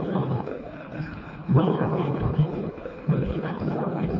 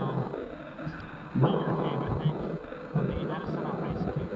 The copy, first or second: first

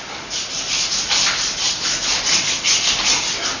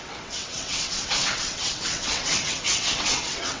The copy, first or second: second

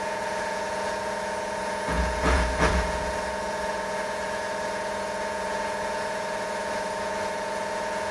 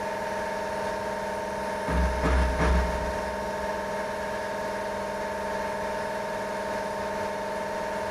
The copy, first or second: first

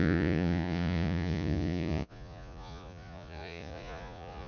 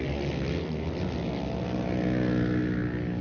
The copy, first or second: first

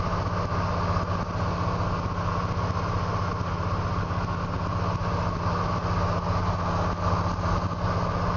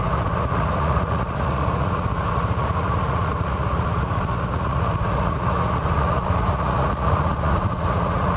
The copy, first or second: second